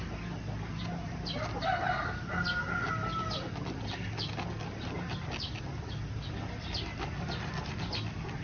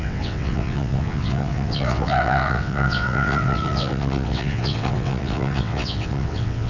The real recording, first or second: first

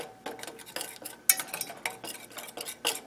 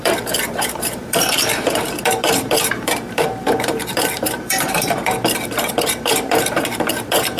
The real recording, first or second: first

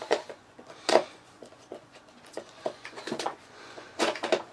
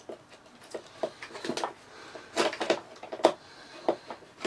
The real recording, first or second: second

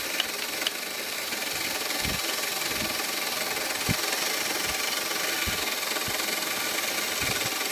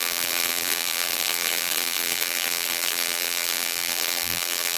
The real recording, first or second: first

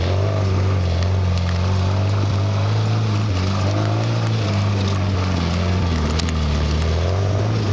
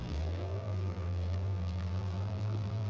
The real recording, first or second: first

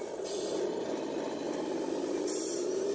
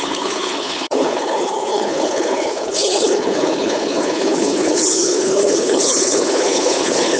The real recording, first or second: first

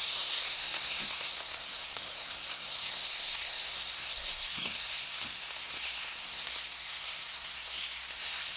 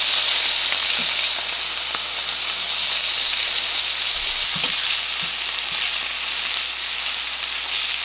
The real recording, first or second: second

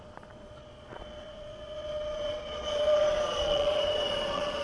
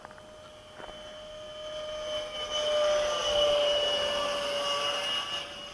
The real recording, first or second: second